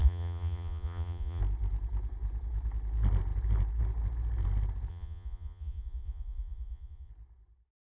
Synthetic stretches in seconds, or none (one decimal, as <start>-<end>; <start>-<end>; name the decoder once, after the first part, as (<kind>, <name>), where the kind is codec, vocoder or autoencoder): 0.0-1.4 (vocoder, Vocos); 4.9-7.1